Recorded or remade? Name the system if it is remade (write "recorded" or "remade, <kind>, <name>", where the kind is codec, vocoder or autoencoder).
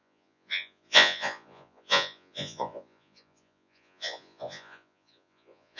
remade, vocoder, Vocos